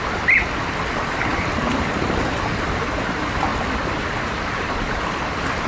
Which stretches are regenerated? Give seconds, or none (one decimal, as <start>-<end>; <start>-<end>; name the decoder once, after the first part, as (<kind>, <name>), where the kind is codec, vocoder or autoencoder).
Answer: 1.3-2.0 (vocoder, BigVGAN v2); 3.5-4.8